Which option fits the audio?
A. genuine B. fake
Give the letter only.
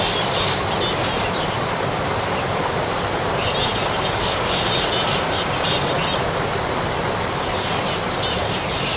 A